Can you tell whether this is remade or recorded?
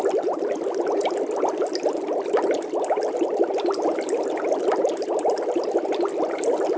recorded